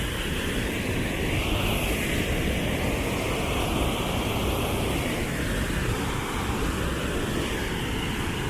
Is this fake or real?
real